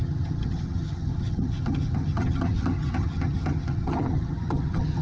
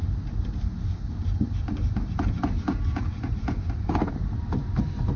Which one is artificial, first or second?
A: first